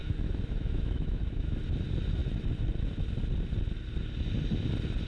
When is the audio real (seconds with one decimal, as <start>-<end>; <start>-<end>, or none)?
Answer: 1.6-5.1